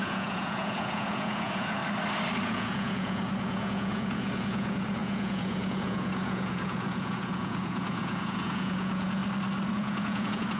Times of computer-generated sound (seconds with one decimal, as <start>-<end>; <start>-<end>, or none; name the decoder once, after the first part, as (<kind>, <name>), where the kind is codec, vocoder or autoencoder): 0.0-1.8 (vocoder, Vocos); 2.4-9.2; 9.7-10.6